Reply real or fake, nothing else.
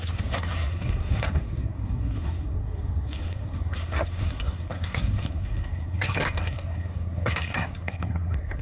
fake